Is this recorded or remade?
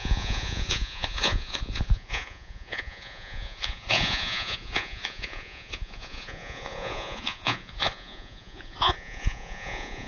remade